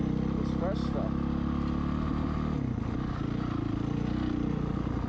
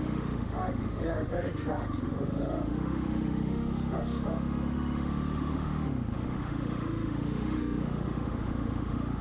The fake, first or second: second